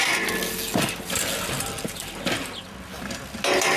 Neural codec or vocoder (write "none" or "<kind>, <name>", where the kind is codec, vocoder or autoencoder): none